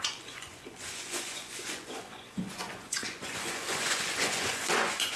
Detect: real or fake fake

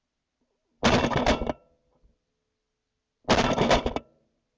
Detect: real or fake real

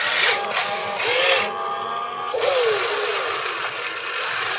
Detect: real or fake real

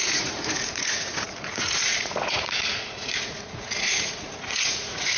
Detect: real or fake fake